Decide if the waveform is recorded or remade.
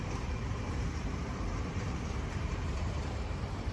remade